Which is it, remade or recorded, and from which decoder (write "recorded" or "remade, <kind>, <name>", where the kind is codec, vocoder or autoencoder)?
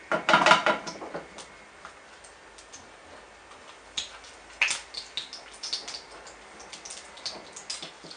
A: recorded